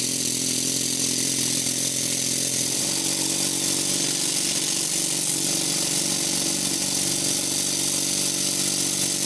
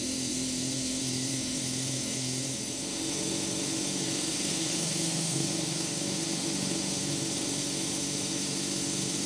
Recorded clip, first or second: first